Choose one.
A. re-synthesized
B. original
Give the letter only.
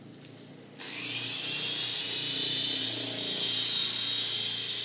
B